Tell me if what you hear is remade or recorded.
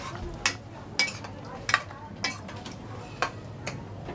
recorded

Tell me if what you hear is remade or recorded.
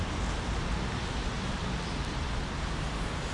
recorded